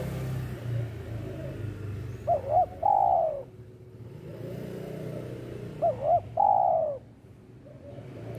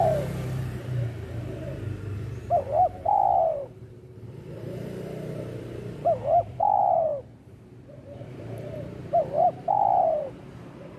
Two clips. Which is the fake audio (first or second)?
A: second